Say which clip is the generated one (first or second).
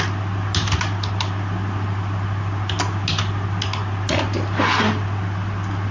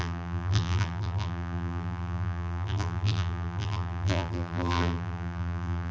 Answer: second